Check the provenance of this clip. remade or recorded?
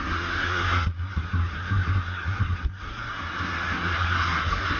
remade